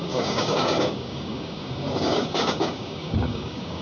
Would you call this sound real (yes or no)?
no